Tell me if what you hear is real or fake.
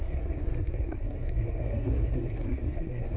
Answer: fake